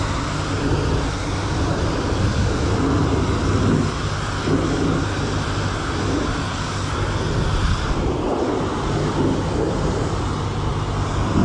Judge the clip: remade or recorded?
recorded